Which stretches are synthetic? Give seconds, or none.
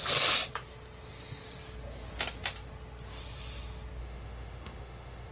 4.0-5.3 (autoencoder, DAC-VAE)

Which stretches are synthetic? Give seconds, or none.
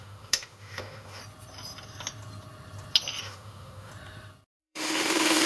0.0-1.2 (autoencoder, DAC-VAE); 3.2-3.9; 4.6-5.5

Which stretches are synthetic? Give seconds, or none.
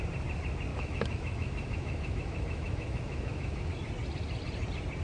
0.7-3.7 (autoencoder, DAC-VAE)